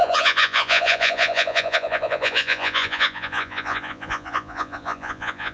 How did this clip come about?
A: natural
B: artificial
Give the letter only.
B